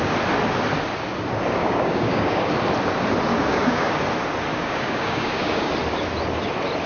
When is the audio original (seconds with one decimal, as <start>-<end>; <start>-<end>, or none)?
0.0-1.6; 2.5-3.3; 4.0-4.5; 5.7-6.9